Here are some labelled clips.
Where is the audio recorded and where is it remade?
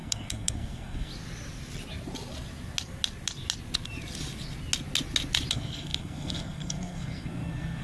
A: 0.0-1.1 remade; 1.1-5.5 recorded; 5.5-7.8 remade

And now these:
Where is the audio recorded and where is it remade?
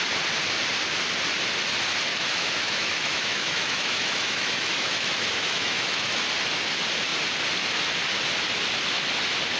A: 0.0-2.1 recorded; 2.1-6.3 remade; 6.3-9.6 recorded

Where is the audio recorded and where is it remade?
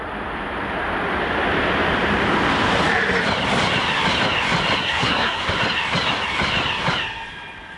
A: 0.0-4.8 recorded; 4.8-5.5 remade; 5.5-7.8 recorded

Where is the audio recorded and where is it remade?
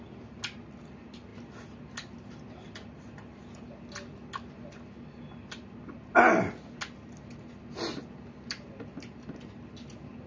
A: 0.0-10.3 recorded